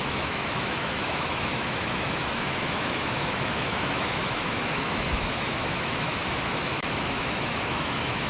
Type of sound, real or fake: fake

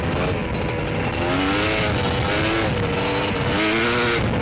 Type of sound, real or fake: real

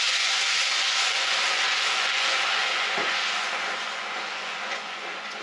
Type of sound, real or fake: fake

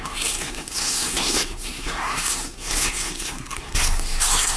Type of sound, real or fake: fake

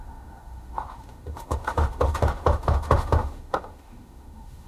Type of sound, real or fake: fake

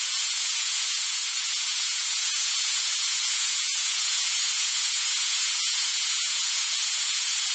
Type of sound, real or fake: fake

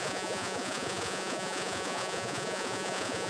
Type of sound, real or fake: fake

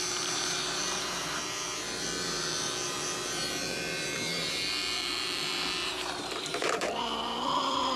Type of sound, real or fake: fake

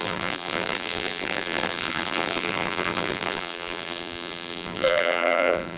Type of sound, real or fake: fake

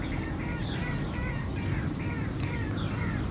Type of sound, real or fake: real